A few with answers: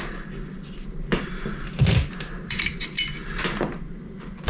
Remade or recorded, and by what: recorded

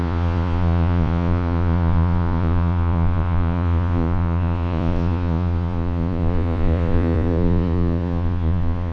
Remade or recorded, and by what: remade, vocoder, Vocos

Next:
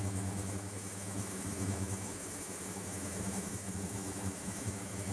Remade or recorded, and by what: remade, autoencoder, DAC-VAE